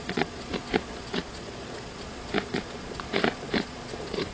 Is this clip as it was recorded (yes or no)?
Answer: no